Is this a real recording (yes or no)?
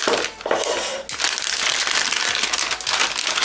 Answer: yes